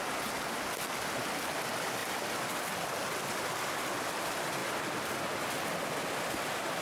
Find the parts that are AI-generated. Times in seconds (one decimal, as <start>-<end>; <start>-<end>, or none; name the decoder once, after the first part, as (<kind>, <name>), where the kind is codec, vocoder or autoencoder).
none